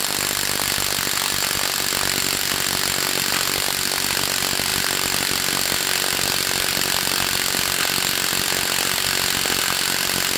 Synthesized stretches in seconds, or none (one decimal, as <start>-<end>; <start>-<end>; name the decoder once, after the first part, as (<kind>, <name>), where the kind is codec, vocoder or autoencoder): none